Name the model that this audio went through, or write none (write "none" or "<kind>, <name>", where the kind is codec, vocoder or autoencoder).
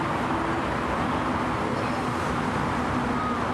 none